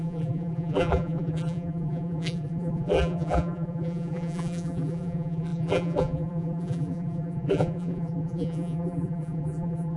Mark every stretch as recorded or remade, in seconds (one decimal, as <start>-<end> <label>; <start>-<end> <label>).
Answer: 0.0-10.0 remade